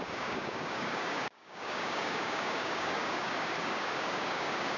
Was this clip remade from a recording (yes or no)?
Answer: yes